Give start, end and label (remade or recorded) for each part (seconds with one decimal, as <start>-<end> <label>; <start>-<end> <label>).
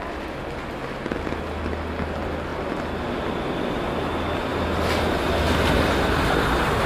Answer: 0.0-6.9 recorded